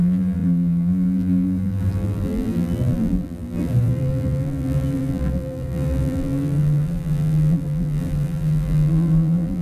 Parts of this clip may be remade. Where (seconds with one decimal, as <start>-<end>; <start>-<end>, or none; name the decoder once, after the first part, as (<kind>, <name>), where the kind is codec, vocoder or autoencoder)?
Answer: 0.0-9.6 (vocoder, BigVGAN v2)